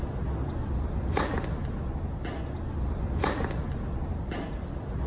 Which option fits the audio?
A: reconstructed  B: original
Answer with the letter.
B